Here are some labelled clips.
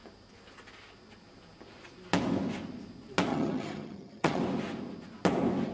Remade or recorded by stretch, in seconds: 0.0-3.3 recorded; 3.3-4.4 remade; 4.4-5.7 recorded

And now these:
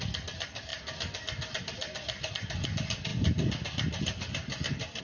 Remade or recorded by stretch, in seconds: 0.0-5.0 recorded

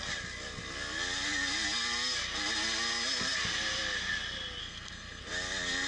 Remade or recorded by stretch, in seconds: 0.0-4.6 recorded; 4.6-5.2 remade; 5.2-5.9 recorded

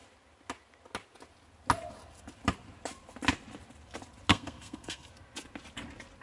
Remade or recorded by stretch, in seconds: 0.0-4.3 recorded; 4.3-5.1 remade; 5.1-6.2 recorded